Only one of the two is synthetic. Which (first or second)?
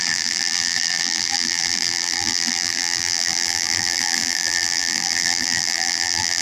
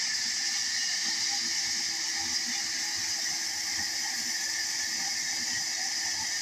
first